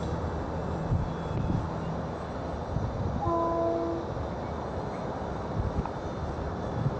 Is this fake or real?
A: real